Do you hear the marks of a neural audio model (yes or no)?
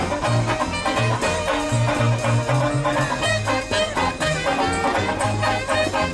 no